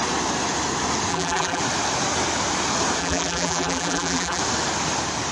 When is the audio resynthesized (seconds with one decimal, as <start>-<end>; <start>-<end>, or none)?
1.1-1.6; 3.0-4.4